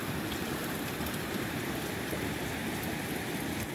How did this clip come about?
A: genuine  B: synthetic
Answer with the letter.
B